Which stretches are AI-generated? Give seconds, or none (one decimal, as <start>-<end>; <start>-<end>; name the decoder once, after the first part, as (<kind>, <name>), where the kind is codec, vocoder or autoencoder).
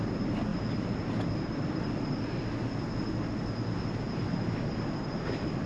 none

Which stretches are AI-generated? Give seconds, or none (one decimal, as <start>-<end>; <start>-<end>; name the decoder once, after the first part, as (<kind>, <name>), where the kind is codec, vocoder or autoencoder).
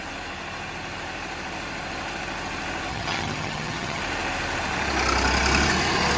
2.9-4.0 (vocoder, HiFi-GAN)